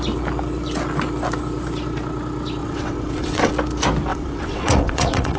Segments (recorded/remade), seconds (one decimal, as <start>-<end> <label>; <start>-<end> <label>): 0.0-2.6 recorded; 2.6-3.5 remade; 3.5-4.1 recorded; 4.1-5.4 remade